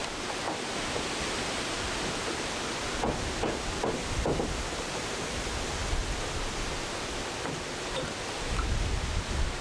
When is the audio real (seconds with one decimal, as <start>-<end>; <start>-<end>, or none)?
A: 5.8-8.0